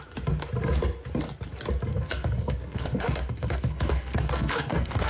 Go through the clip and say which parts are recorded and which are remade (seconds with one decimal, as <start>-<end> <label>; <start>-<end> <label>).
0.0-1.9 recorded; 1.9-5.1 remade